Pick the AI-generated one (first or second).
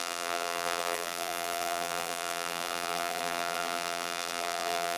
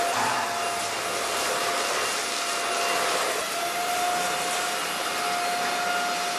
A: first